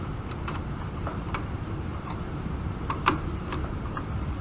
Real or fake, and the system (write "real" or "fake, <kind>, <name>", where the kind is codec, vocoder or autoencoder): fake, vocoder, BigVGAN v2